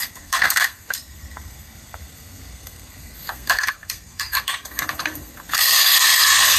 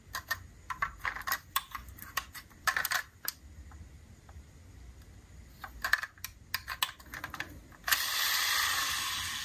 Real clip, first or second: second